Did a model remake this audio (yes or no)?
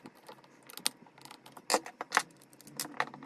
no